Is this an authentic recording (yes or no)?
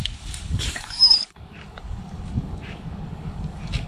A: no